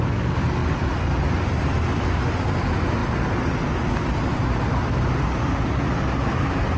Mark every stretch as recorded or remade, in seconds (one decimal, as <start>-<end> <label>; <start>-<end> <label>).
0.0-0.6 recorded; 0.6-1.2 remade; 1.2-6.8 recorded